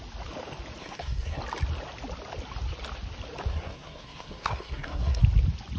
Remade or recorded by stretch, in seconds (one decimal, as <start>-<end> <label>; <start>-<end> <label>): 0.0-0.8 recorded; 0.8-1.4 remade; 1.4-3.5 recorded; 3.5-5.2 remade; 5.2-5.8 recorded